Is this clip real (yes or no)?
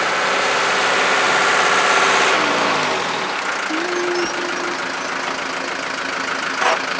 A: yes